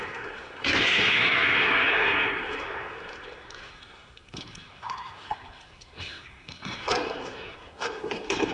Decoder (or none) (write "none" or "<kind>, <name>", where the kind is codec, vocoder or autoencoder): codec, SNAC